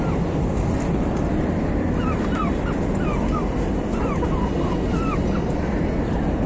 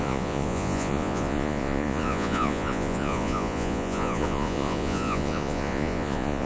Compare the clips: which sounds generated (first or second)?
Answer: second